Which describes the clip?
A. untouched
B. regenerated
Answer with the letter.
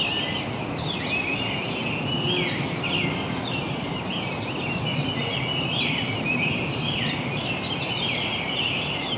A